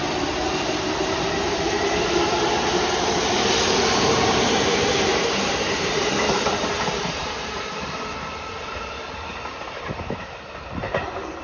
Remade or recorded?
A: remade